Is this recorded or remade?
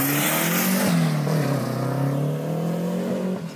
recorded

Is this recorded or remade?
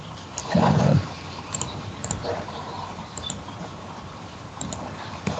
remade